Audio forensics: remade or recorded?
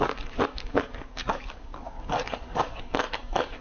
remade